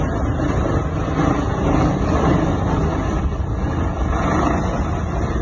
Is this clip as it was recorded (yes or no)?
yes